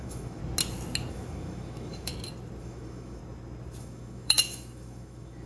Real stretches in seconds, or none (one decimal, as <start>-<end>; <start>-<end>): 0.4-1.1; 2.1-2.6; 3.2-3.8